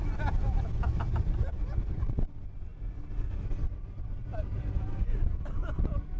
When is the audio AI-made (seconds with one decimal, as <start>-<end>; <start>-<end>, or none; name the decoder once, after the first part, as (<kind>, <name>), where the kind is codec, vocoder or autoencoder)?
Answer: none